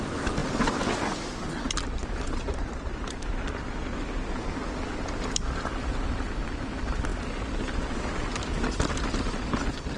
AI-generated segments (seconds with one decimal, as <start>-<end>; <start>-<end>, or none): 2.0-3.0